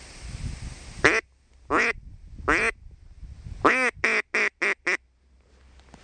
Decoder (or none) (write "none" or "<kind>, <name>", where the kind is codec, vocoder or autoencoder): none